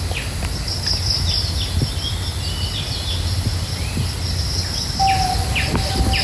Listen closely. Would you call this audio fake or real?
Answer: real